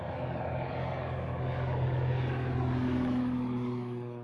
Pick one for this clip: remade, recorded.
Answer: remade